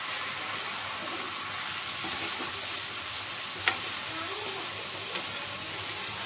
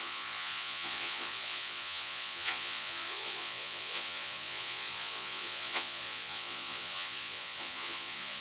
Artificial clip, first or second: second